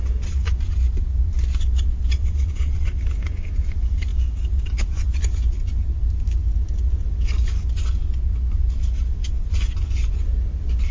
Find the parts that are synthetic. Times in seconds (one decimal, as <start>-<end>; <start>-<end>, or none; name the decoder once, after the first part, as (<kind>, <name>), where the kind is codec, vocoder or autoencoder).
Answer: 2.2-2.9 (vocoder, Vocos)